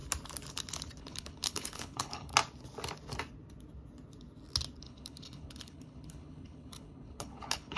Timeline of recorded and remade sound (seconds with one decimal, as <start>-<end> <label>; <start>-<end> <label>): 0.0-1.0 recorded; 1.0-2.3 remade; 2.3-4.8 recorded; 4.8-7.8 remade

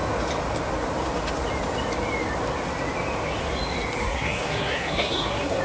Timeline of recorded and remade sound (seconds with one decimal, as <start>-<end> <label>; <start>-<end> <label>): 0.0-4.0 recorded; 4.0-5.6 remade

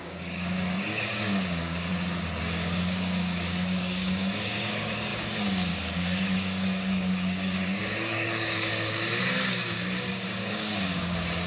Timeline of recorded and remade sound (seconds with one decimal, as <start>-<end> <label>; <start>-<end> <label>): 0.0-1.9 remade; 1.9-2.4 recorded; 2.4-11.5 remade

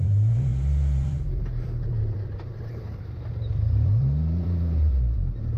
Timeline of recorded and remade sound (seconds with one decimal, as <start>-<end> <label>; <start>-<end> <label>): 0.0-5.6 remade